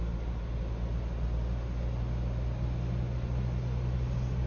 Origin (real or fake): real